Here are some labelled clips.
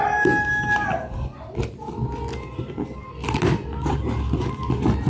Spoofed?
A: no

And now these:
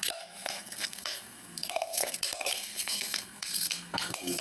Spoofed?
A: yes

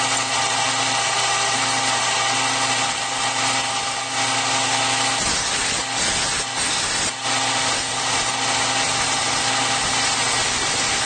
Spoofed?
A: no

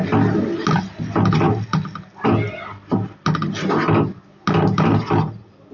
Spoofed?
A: no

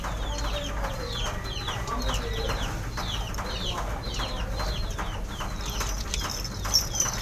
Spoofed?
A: no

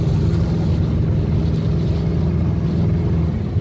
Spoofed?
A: no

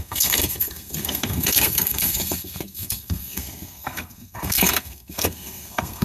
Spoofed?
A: yes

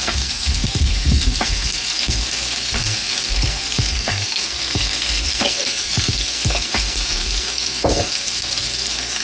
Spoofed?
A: yes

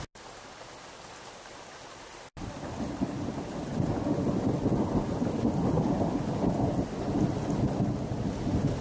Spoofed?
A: no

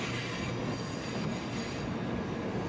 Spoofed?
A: no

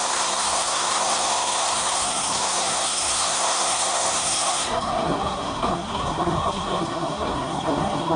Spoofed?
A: yes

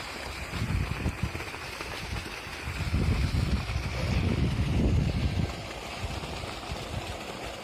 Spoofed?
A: no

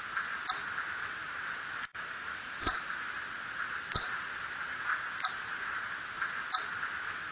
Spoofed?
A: no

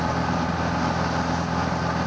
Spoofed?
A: no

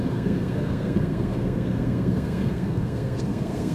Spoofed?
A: yes